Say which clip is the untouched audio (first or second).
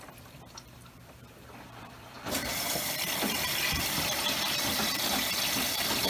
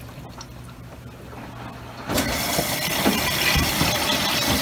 second